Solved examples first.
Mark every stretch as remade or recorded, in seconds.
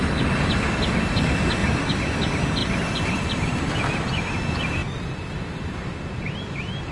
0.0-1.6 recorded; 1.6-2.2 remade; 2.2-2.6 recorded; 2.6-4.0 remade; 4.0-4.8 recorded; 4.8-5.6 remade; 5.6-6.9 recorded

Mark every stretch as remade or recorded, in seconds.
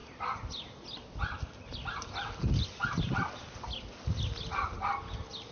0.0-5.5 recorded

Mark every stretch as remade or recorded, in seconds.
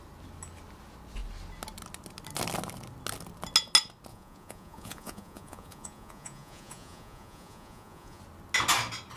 0.0-4.1 recorded; 4.1-8.2 remade; 8.2-9.2 recorded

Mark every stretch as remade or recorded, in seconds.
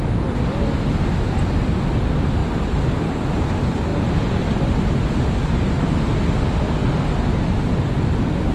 0.0-8.5 recorded